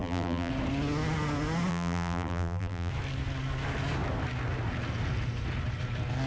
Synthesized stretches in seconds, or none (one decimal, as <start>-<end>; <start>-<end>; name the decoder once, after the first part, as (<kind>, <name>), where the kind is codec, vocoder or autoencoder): 0.0-0.5 (vocoder, BigVGAN v2); 1.7-2.9